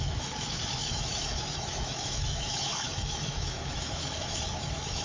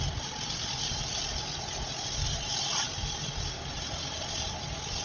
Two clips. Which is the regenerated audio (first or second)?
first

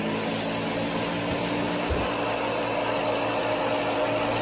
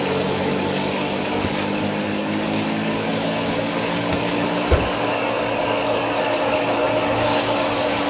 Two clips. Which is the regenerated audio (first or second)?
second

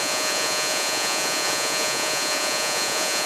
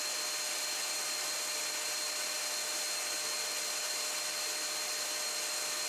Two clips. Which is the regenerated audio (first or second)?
first